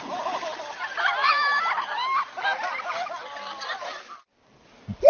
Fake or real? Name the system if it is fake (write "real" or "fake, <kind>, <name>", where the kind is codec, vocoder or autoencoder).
fake, vocoder, BigVGAN v2